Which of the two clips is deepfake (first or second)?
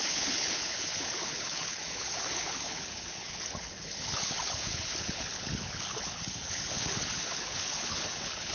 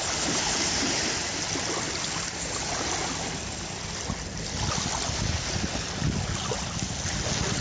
first